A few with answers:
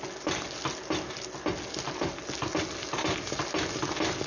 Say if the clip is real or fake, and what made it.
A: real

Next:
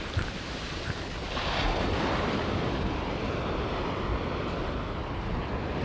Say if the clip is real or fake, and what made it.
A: real